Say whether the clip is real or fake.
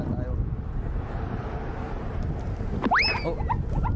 real